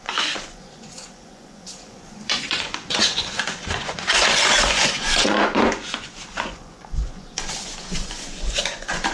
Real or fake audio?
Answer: fake